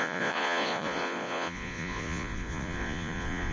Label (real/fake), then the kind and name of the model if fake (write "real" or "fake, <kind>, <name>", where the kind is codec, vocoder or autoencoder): fake, vocoder, Vocos